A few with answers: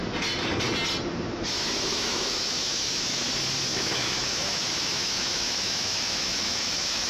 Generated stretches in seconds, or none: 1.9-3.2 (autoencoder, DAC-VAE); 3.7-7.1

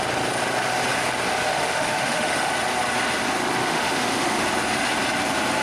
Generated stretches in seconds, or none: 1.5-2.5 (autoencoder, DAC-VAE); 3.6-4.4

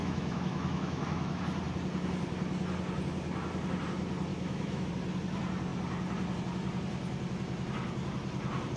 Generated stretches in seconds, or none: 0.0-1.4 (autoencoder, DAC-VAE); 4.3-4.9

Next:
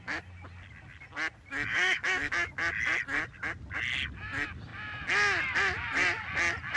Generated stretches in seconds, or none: 1.7-2.5 (autoencoder, DAC-VAE)